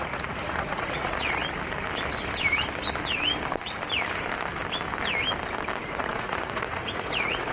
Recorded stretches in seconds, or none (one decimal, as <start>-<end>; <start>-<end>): 1.4-5.9